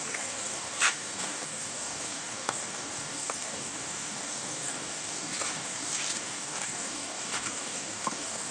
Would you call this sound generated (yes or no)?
yes